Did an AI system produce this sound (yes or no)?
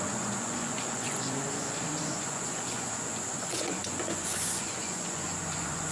yes